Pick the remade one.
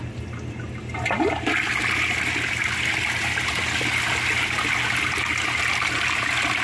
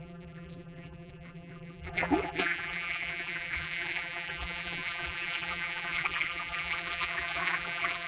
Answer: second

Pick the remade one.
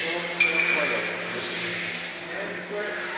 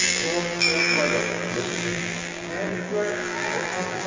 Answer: second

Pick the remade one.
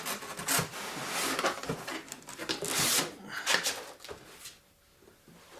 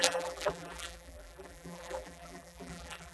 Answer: second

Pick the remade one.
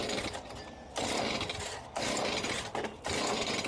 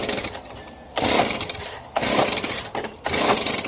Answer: second